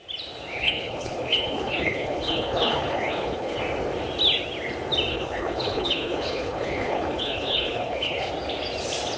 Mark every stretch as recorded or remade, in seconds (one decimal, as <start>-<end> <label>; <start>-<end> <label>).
0.0-0.5 recorded; 0.5-3.6 remade; 3.6-5.1 recorded; 5.1-8.3 remade; 8.3-9.2 recorded